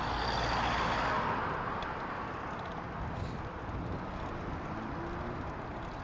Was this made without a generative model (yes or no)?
yes